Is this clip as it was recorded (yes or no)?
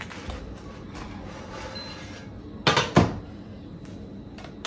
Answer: yes